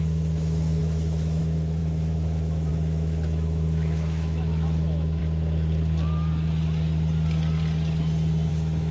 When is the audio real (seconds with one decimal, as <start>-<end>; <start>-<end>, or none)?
5.2-8.5